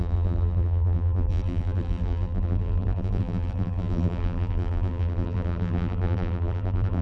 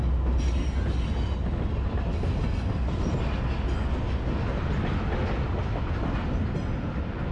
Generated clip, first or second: first